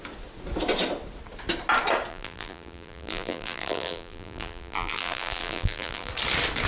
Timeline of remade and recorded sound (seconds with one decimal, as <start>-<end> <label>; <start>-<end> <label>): 0.0-2.1 recorded; 2.1-6.1 remade; 6.1-6.7 recorded